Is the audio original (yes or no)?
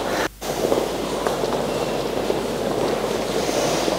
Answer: yes